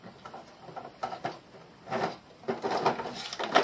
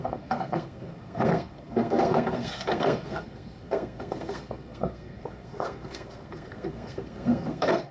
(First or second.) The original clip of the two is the first